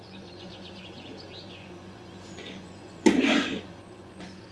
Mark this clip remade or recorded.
remade